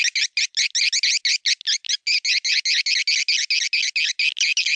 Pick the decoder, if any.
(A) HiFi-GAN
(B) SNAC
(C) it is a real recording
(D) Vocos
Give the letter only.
C